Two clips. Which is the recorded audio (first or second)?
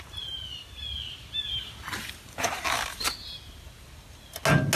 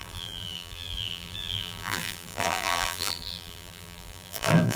first